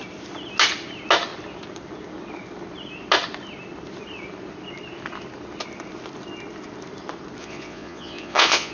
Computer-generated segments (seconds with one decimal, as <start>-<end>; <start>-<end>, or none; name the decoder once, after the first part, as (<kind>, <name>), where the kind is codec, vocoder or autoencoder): 7.4-8.7 (vocoder, Vocos)